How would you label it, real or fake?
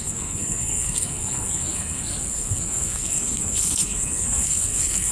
fake